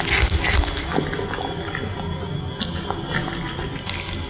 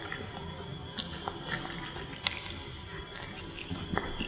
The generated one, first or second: second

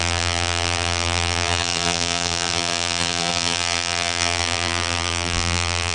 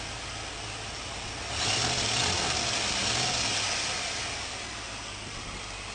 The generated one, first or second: first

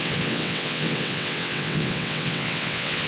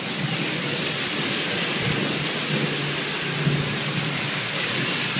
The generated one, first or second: first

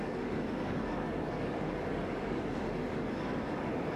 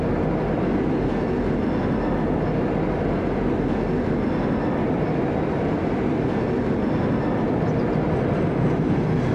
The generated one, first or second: first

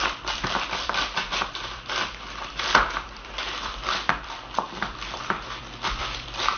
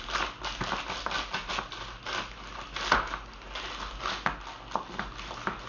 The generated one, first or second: first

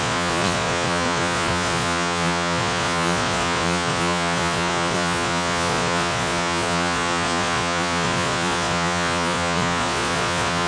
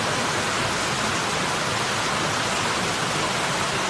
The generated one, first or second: first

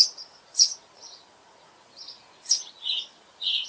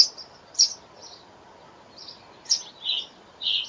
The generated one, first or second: first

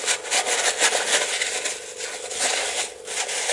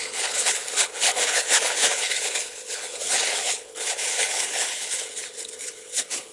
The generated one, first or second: second